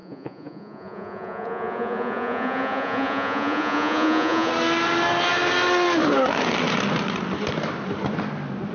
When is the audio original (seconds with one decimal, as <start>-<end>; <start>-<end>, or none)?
4.5-8.7